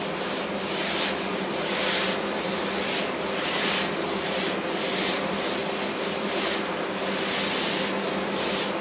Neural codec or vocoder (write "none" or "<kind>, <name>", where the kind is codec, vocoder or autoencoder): none